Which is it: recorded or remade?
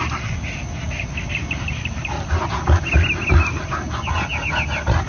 recorded